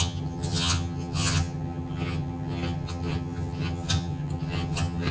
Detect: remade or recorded remade